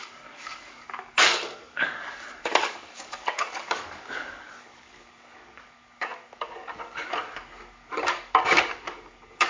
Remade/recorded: remade